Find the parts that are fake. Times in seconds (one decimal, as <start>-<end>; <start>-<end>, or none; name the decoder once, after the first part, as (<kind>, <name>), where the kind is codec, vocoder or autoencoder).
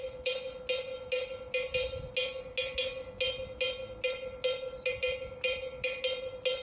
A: none